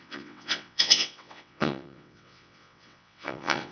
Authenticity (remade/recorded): remade